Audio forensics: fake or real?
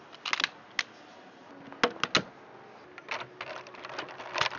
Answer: real